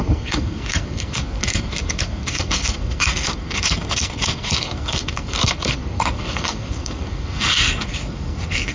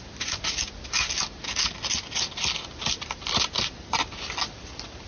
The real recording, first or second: second